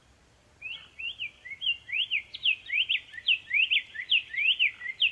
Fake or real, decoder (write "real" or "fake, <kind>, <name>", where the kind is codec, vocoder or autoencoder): fake, vocoder, BigVGAN v2